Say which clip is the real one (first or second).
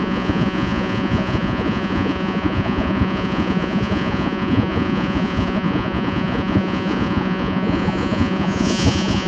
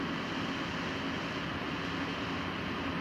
second